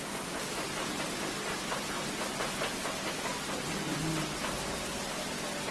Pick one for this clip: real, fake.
real